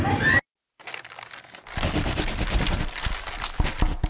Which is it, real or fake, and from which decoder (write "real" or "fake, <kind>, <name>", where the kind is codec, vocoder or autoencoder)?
real